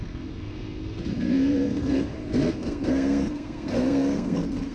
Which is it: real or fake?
fake